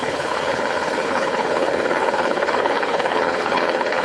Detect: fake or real fake